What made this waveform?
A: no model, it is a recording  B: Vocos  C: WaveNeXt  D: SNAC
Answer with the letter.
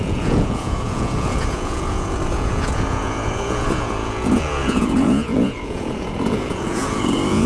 B